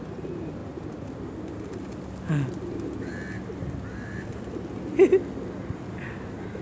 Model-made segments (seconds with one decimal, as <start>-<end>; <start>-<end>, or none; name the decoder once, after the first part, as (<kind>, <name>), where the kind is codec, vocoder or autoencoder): none